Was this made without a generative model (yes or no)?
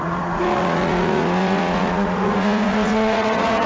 no